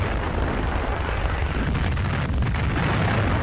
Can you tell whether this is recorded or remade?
recorded